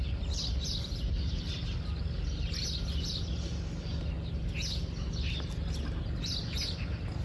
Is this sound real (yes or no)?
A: yes